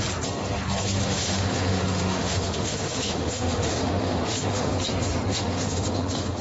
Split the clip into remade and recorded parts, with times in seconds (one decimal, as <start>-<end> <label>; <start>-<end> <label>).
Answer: 0.0-1.0 recorded; 1.0-4.8 remade; 4.8-5.3 recorded; 5.3-6.4 remade